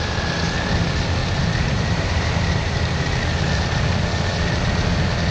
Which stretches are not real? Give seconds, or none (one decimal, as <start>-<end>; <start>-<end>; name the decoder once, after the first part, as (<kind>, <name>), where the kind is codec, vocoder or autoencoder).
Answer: 1.2-3.0 (vocoder, BigVGAN v2)